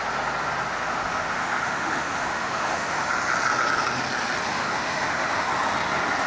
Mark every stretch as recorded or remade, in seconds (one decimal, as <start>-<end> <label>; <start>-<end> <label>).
0.0-1.0 recorded; 1.0-3.1 remade; 3.1-4.5 recorded; 4.5-5.5 remade; 5.5-6.3 recorded